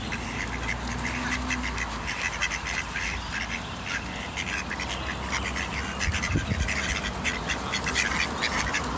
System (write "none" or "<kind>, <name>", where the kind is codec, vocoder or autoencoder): vocoder, BigVGAN v2